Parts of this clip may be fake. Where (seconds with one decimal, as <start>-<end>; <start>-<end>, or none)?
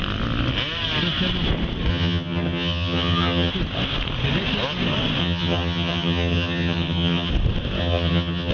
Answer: 1.9-3.5; 5.2-7.3; 7.8-8.5